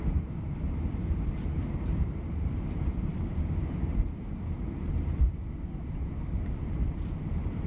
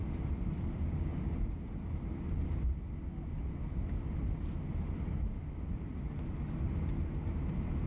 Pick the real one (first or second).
second